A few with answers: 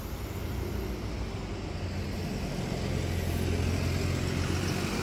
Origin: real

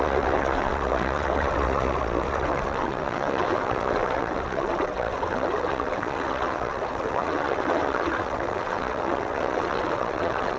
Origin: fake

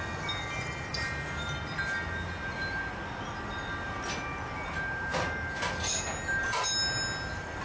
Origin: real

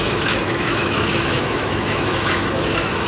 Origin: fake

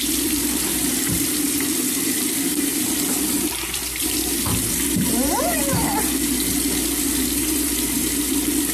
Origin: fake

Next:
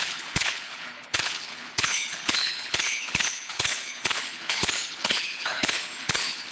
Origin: fake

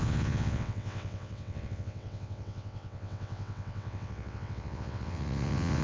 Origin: fake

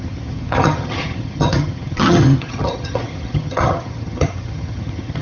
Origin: fake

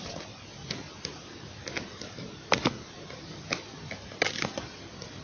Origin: real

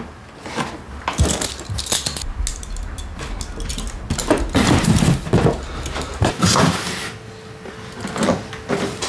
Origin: real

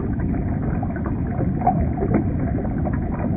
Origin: real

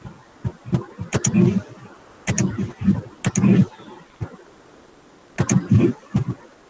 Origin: real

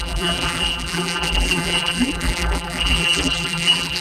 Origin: fake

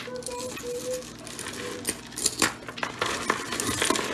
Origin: real